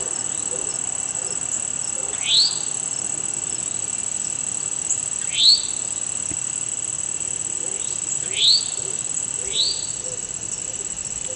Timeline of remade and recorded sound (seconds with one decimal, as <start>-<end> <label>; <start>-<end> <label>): 0.0-11.4 recorded